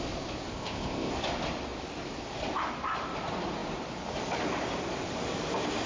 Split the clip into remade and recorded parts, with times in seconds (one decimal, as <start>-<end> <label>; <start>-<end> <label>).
0.0-0.5 recorded; 0.5-1.1 remade; 1.1-5.9 recorded